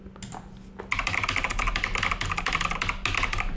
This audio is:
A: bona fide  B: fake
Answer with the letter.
A